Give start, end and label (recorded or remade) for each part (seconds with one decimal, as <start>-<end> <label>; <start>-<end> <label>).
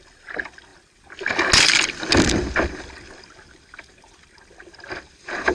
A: 0.0-5.5 recorded